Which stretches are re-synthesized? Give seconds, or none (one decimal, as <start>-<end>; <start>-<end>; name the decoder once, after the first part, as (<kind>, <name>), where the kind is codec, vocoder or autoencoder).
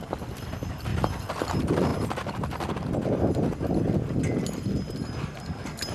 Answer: none